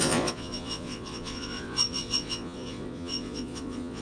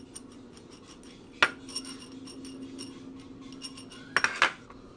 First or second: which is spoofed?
first